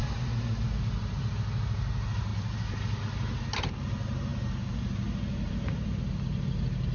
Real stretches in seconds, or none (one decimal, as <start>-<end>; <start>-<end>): 1.3-2.3; 3.0-6.9